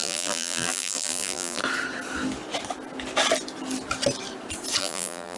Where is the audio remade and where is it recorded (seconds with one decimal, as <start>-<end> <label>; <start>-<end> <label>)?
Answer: 0.0-1.6 remade; 1.6-4.8 recorded; 4.8-5.4 remade